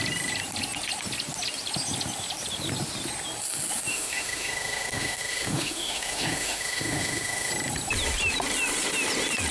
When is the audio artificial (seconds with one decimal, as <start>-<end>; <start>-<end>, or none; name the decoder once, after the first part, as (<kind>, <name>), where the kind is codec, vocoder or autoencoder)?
3.9-7.5 (autoencoder, DAC-VAE)